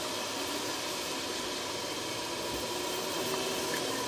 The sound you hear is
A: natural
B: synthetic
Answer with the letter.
A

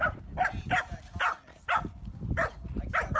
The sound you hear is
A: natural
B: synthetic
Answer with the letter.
A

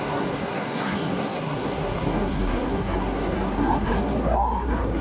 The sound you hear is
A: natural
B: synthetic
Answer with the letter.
B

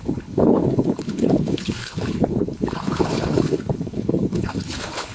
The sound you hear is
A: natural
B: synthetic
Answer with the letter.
B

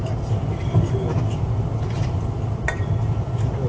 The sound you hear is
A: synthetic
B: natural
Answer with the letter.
B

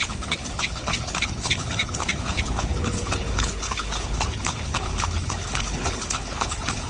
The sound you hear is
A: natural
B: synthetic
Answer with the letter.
B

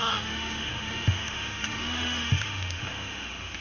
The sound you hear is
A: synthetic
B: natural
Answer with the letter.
A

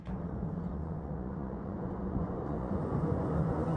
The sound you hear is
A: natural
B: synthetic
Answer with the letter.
B